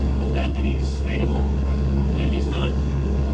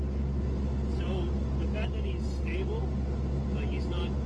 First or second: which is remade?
first